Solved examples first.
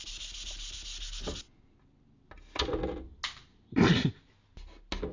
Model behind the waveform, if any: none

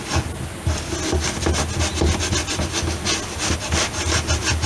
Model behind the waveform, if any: none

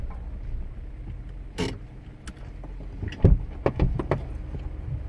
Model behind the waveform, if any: none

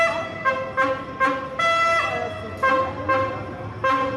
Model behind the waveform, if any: none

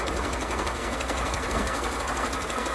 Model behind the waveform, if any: codec, SNAC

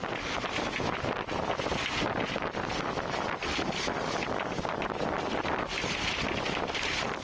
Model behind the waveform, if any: none